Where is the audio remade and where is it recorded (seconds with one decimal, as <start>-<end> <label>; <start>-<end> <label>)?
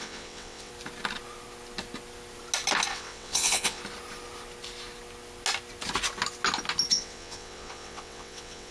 0.0-0.7 remade; 0.7-2.9 recorded; 2.9-3.8 remade; 3.8-6.9 recorded; 6.9-8.7 remade